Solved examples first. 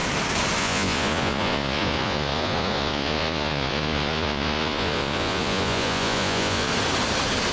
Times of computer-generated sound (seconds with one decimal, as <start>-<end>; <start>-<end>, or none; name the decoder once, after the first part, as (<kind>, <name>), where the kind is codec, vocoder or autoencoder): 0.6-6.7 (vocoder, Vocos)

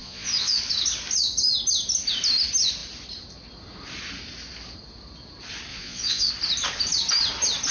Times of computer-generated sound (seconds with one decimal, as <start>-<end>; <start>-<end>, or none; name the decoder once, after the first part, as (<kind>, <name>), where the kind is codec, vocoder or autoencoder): 0.0-0.6 (vocoder, Vocos); 5.7-6.3

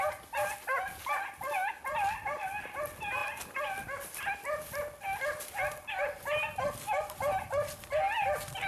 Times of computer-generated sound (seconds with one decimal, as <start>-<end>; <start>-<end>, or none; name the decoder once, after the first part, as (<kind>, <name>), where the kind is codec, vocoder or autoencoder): none

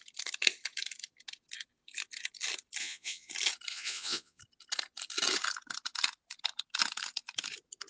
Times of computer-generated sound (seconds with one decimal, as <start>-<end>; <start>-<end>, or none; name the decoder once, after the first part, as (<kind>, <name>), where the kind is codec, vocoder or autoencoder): 2.8-3.3 (vocoder, Vocos); 3.7-4.4

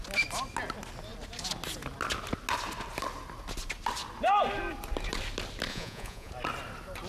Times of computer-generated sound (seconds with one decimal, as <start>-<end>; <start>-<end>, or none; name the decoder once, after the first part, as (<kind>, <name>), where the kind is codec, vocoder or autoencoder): 5.7-6.3 (vocoder, Vocos)

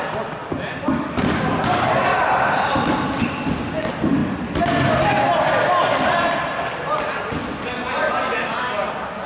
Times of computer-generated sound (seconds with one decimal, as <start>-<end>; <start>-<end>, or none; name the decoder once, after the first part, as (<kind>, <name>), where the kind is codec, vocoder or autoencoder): none

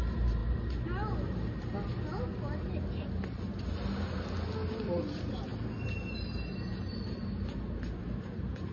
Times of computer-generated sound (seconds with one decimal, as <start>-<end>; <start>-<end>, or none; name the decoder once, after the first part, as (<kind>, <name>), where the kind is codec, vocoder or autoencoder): none

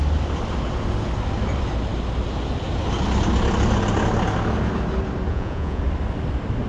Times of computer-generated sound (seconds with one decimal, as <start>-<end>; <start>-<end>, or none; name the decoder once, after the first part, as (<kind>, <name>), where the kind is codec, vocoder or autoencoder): 5.3-5.8 (vocoder, Vocos)